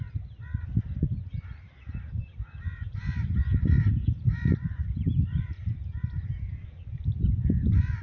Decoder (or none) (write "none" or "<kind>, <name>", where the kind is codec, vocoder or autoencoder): vocoder, BigVGAN v2